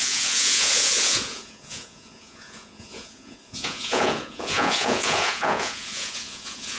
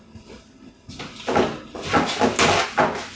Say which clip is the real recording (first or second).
second